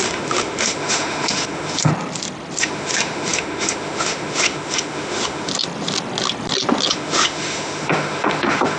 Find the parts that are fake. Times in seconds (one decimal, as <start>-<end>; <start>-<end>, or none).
0.0-1.9; 2.6-5.5; 6.9-8.8